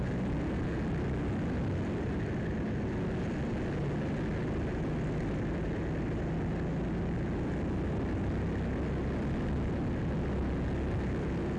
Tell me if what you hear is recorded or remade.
recorded